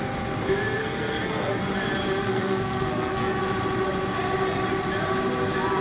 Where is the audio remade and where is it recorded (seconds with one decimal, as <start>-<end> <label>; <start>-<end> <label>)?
0.0-0.8 recorded; 0.8-1.6 remade; 1.6-2.2 recorded; 2.2-3.4 remade; 3.4-5.8 recorded